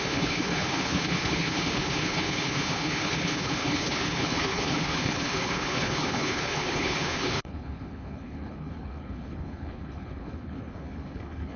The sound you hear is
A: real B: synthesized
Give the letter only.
B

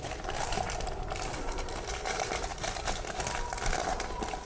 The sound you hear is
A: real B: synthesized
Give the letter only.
A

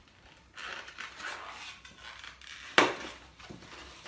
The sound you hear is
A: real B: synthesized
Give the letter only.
A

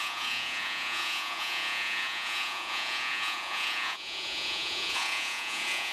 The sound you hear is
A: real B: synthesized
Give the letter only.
B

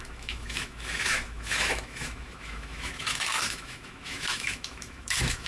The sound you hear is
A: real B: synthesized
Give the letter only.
B